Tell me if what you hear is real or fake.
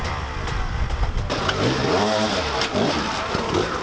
real